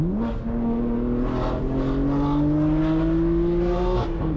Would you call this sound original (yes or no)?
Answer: yes